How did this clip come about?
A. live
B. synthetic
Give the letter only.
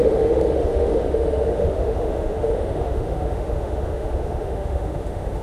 B